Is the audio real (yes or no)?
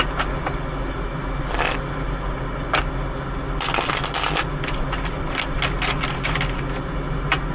yes